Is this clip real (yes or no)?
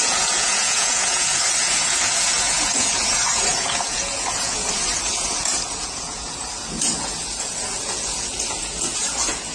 no